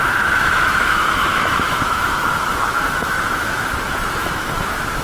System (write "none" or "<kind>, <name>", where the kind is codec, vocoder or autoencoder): autoencoder, DAC-VAE